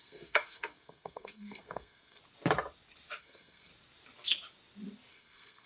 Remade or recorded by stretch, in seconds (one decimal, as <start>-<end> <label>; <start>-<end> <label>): 0.0-2.2 remade; 2.2-3.2 recorded; 3.2-3.7 remade; 3.7-5.1 recorded; 5.1-5.7 remade